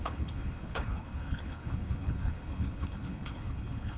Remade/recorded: remade